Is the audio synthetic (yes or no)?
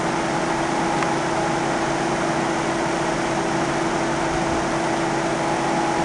no